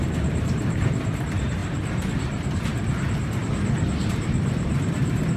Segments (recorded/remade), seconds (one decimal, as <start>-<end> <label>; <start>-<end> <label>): 0.0-1.6 remade; 1.6-4.1 recorded; 4.1-5.4 remade